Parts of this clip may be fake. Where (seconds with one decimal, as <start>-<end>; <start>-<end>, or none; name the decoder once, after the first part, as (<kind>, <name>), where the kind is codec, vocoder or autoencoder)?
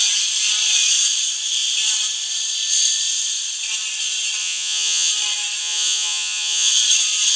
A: 4.4-5.1 (vocoder, Vocos); 5.6-6.7